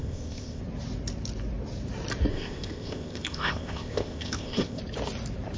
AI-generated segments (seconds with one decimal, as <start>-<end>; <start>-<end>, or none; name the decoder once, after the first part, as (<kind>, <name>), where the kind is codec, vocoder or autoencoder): 0.0-0.6 (codec, ZipCodec); 2.3-4.8